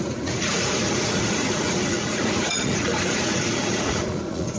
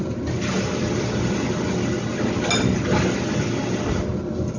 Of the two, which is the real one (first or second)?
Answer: second